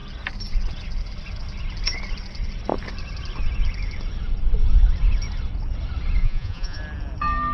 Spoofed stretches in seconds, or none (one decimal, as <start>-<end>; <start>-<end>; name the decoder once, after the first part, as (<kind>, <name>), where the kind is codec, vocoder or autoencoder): 6.2-6.8 (vocoder, Vocos)